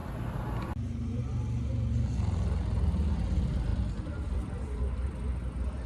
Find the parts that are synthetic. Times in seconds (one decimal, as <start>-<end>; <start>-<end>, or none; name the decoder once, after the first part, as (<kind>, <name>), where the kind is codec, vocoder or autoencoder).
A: none